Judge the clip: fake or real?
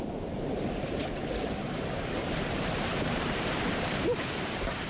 fake